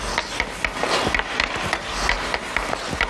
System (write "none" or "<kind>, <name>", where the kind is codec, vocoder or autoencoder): none